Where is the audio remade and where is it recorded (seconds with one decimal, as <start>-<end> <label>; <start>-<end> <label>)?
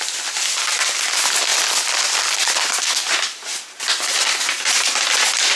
0.0-5.6 recorded